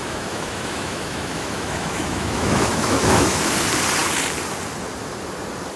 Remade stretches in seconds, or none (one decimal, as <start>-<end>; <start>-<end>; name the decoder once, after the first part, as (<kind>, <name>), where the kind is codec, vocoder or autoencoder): 0.0-3.5 (autoencoder, DAC-VAE)